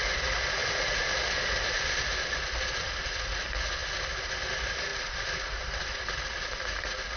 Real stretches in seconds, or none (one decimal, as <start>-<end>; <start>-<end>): 0.0-7.2